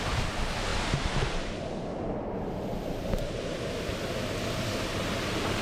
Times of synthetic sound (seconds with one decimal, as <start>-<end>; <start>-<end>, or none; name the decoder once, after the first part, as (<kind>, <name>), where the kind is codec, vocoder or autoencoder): none